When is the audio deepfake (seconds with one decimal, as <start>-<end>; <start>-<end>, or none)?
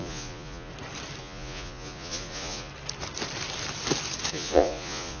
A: 0.0-0.7; 1.2-2.7; 4.3-5.2